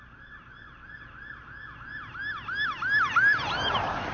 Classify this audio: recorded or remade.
recorded